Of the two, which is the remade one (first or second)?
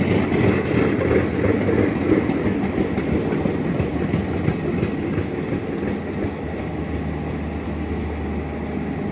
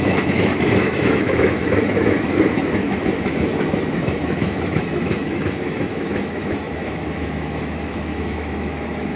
second